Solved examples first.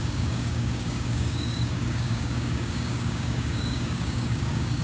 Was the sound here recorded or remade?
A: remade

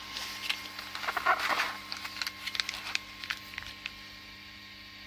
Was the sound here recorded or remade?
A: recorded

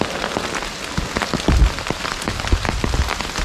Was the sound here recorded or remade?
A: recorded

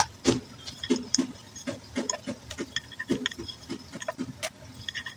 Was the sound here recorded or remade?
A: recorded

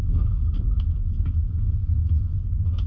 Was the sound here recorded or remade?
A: recorded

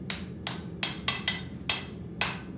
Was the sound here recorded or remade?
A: recorded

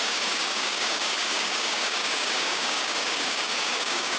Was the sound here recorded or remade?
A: remade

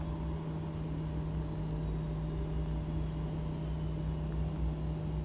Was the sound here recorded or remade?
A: recorded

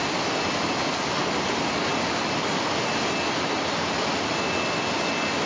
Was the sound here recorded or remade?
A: recorded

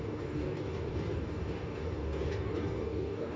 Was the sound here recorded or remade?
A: remade